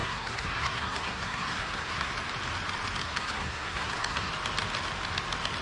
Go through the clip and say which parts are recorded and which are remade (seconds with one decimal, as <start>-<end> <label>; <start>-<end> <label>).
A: 0.0-2.1 remade; 2.1-3.0 recorded; 3.0-4.3 remade; 4.3-5.6 recorded